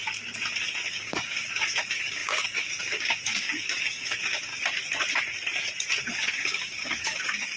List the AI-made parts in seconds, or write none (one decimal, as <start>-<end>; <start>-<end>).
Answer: 0.9-4.5; 6.0-7.6